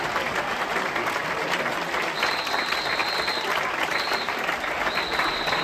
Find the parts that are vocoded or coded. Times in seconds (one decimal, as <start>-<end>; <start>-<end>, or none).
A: none